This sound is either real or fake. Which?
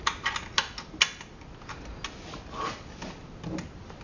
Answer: real